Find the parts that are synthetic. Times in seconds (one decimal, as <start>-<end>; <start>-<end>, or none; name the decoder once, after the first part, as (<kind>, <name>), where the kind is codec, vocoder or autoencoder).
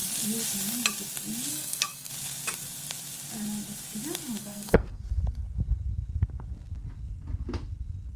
1.5-2.1 (codec, SNAC); 4.4-5.0